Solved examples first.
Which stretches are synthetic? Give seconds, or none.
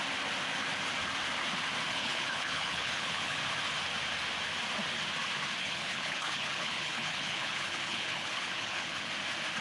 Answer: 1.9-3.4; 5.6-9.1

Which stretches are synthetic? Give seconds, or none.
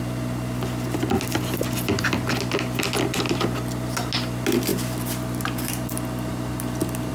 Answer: none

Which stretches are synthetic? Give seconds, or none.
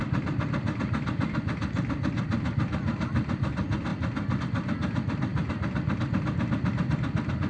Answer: none